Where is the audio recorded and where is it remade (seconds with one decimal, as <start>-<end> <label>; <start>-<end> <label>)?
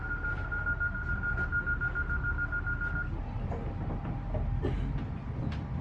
0.0-5.8 recorded